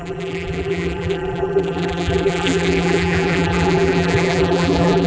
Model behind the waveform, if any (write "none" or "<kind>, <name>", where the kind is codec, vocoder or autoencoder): vocoder, BigVGAN v2